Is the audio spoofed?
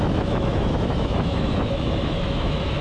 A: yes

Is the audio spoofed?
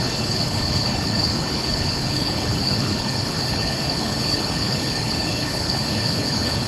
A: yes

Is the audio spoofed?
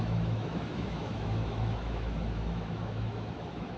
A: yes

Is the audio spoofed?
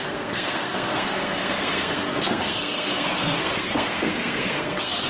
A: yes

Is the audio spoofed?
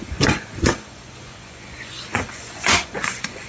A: yes